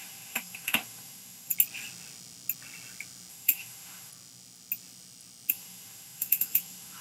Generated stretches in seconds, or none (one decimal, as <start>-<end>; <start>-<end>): 0.0-1.5; 3.3-4.1; 5.5-7.0